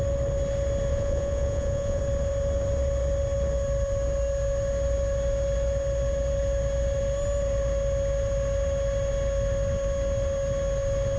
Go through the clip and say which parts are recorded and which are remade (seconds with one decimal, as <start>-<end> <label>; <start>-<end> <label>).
0.0-0.9 recorded; 0.9-2.0 remade; 2.0-11.2 recorded